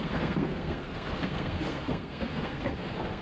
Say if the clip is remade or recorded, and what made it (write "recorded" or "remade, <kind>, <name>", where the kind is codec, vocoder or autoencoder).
remade, codec, SNAC